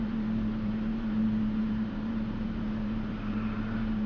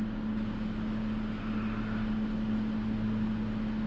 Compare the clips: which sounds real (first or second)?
second